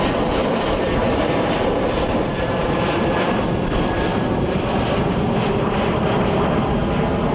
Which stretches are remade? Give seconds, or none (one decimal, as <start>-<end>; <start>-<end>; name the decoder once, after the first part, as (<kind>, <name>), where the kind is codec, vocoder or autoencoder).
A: 1.0-2.5 (vocoder, BigVGAN v2); 4.1-6.5